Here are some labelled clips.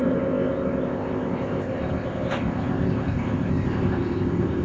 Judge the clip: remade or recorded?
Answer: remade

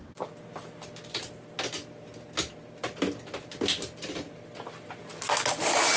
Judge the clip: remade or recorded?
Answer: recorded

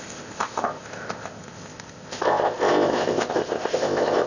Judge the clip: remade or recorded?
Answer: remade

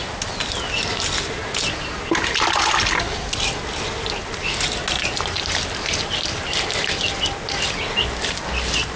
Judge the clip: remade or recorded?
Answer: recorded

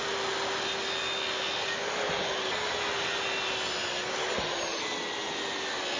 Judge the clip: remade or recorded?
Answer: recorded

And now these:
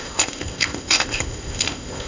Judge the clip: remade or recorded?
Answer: remade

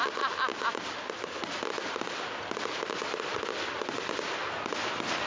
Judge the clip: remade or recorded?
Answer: recorded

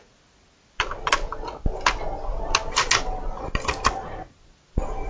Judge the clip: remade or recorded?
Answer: recorded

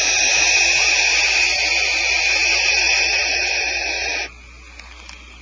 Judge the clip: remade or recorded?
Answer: recorded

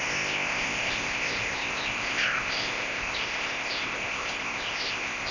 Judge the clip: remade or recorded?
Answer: remade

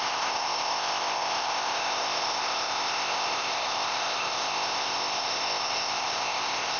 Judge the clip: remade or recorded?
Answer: remade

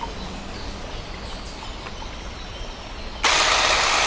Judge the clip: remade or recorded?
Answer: recorded